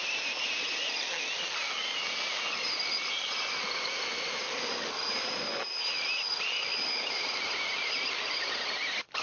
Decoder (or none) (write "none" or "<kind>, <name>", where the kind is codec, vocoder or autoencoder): none